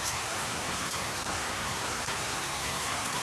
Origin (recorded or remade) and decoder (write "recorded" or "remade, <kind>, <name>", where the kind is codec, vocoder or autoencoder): remade, codec, SNAC